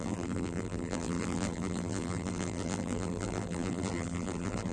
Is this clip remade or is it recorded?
remade